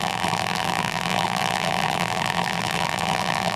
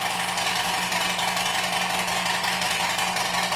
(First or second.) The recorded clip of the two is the second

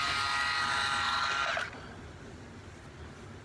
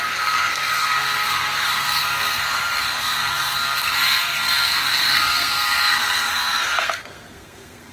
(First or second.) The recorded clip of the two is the first